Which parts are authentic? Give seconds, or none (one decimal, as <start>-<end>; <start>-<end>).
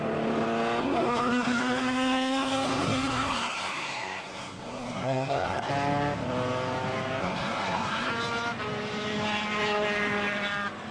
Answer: 0.0-0.8; 5.7-7.2; 8.1-10.9